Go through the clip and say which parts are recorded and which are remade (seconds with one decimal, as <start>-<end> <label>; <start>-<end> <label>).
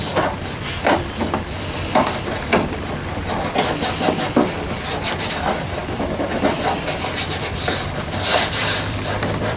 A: 0.0-1.2 remade; 1.2-5.1 recorded; 5.1-5.8 remade; 5.8-7.0 recorded; 7.0-9.6 remade